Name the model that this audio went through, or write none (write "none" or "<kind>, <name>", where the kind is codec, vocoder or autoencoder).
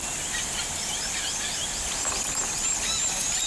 none